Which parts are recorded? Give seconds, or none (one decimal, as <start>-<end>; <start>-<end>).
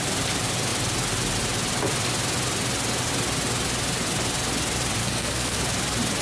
0.0-5.0; 5.6-6.2